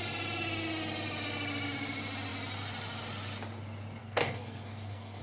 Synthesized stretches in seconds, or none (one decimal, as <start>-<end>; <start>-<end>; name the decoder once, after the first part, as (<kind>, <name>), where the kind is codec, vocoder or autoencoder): 4.0-5.2 (codec, SNAC)